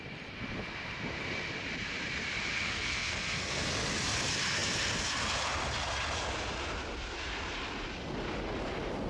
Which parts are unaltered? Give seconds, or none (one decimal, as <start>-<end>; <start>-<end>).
0.0-2.5; 3.7-9.1